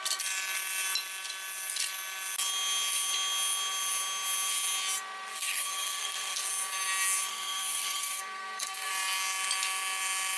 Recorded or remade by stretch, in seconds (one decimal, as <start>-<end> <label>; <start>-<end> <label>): 0.0-5.3 recorded; 5.3-6.5 remade; 6.5-7.3 recorded; 7.3-8.9 remade; 8.9-10.4 recorded